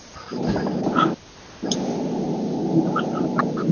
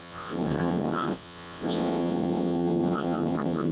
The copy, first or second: second